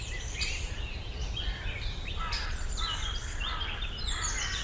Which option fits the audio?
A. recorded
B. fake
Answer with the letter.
A